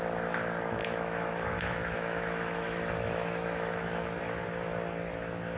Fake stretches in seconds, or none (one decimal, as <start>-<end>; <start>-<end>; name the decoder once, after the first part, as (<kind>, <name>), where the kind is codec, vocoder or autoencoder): 0.8-4.2 (autoencoder, DAC-VAE)